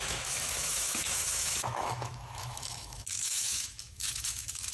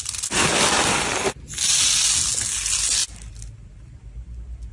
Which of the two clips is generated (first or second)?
first